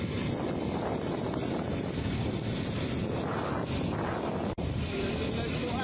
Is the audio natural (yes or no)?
yes